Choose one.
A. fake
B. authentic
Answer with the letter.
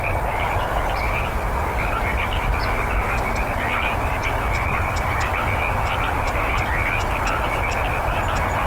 A